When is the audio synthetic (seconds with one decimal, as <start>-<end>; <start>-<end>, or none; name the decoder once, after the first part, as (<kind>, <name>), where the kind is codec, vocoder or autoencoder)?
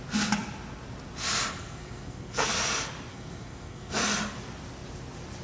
1.6-2.5 (codec, SNAC); 3.1-4.0